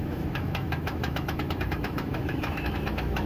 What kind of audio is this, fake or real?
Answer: fake